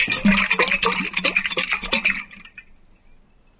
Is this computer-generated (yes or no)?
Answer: no